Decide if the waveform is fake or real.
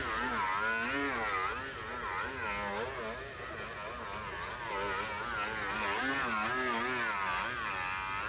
real